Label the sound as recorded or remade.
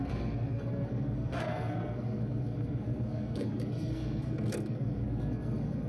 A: remade